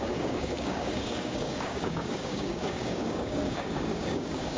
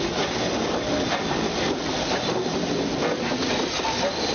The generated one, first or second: first